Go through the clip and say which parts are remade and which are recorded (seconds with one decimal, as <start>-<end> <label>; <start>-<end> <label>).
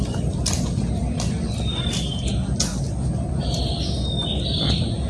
0.0-5.1 recorded